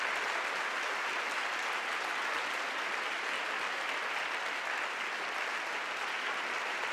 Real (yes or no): yes